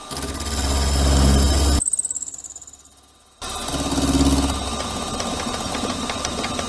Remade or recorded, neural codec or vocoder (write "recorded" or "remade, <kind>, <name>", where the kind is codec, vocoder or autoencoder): recorded